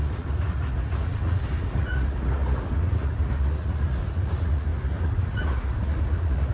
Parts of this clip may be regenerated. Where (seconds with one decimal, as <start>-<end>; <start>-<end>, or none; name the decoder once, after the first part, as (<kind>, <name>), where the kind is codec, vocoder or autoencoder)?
0.0-6.5 (vocoder, Vocos)